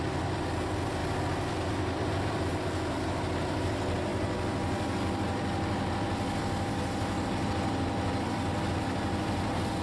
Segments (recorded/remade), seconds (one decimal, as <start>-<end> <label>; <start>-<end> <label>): 0.0-9.8 recorded